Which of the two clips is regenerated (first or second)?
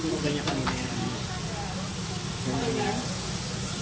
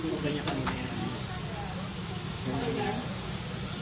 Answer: second